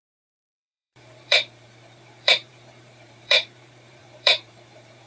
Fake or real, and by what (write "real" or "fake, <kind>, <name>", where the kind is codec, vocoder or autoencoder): fake, vocoder, BigVGAN v2